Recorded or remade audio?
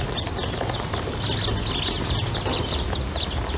recorded